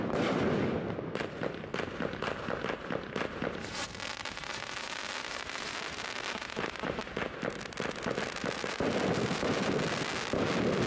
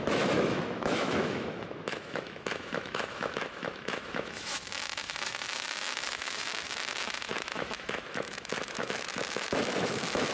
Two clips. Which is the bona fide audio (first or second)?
first